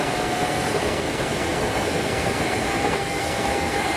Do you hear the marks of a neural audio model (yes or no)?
yes